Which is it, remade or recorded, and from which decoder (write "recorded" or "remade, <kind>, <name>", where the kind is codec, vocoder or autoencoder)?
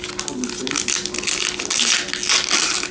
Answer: recorded